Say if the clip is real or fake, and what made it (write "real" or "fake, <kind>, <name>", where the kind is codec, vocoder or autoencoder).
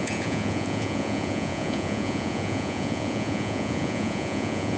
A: fake, vocoder, Vocos